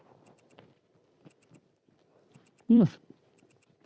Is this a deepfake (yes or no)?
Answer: yes